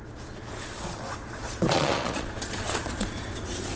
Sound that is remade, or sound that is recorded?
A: remade